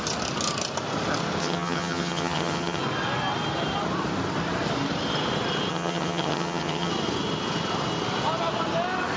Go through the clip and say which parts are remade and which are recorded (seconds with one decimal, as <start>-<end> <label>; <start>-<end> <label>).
0.0-1.4 recorded; 1.4-2.8 remade; 2.8-5.7 recorded; 5.7-6.9 remade; 6.9-9.2 recorded